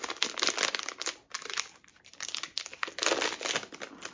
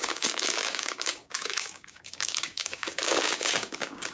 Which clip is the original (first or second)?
first